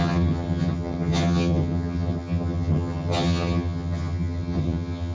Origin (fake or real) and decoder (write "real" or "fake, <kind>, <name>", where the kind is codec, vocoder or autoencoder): fake, vocoder, HiFi-GAN